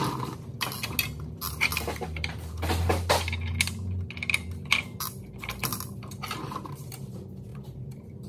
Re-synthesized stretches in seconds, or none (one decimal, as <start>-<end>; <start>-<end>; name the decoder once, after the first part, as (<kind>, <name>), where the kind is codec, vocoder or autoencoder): 7.5-8.3 (vocoder, BigVGAN v2)